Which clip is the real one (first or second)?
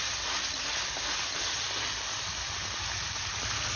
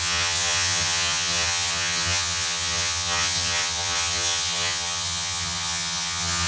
first